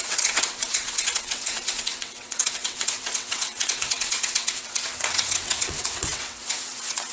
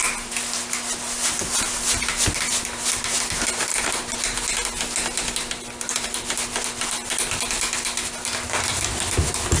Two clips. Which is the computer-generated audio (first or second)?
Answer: first